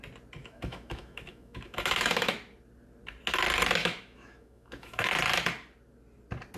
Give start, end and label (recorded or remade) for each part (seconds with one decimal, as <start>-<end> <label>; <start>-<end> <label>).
0.0-0.4 recorded; 0.4-2.3 remade; 2.3-3.8 recorded; 3.8-5.1 remade; 5.1-6.6 recorded

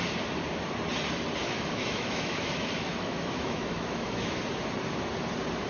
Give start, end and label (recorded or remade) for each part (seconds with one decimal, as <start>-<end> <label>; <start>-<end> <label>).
0.0-1.4 recorded; 1.4-4.4 remade; 4.4-5.7 recorded

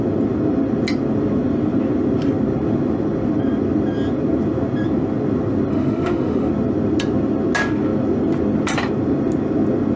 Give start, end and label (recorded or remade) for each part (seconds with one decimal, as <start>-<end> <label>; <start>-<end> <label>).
0.0-5.7 recorded; 5.7-6.5 remade; 6.5-10.0 recorded

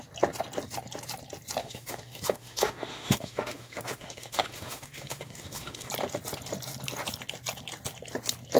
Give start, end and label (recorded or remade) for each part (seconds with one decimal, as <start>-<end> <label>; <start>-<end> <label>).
0.0-1.6 recorded; 1.6-5.9 remade; 5.9-8.6 recorded

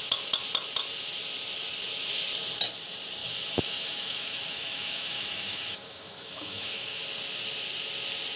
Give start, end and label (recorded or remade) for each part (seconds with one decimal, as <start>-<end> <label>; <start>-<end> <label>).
0.0-3.2 recorded; 3.2-7.0 remade; 7.0-8.4 recorded

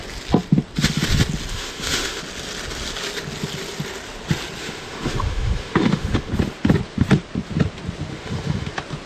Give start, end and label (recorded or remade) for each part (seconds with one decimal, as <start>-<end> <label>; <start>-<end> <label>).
0.0-1.5 recorded; 1.5-2.2 remade; 2.2-4.6 recorded; 4.6-6.3 remade; 6.3-8.1 recorded; 8.1-8.7 remade; 8.7-9.1 recorded